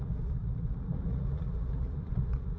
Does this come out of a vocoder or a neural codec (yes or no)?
yes